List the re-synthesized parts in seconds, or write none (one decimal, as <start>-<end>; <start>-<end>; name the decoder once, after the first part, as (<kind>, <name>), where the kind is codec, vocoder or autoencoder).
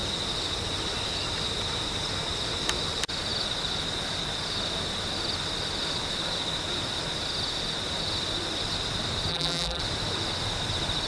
9.3-9.8 (vocoder, BigVGAN v2)